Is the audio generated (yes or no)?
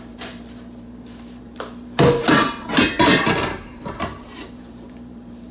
yes